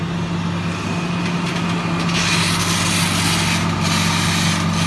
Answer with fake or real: real